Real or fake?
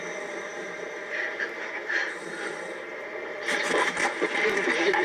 fake